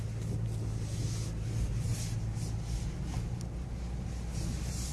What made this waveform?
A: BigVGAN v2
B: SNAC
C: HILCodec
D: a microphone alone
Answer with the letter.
D